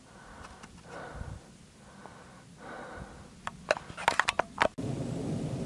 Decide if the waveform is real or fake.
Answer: real